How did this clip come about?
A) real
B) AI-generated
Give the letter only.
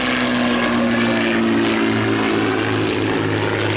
A